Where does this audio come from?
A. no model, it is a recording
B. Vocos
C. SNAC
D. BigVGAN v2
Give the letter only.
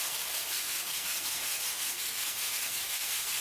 C